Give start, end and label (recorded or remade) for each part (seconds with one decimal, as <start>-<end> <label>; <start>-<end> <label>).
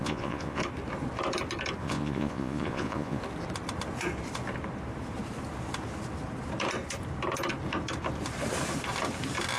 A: 0.0-0.6 remade; 0.6-1.8 recorded; 1.8-3.2 remade; 3.2-9.6 recorded